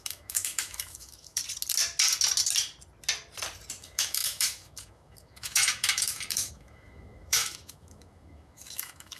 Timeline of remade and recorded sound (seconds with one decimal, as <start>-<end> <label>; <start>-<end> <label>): 0.0-1.4 remade; 1.4-3.8 recorded; 3.8-9.2 remade